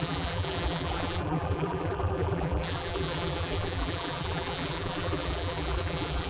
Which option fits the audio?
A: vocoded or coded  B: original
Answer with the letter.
A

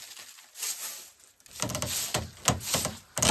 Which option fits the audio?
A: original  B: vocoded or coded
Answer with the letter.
A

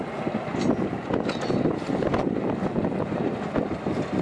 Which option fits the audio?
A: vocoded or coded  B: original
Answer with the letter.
B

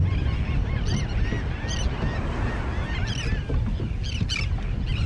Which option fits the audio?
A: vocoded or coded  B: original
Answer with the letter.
B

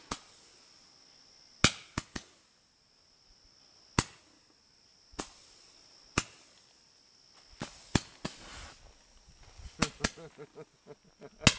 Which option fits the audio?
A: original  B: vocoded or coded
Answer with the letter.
A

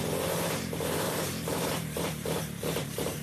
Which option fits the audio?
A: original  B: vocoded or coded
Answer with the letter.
B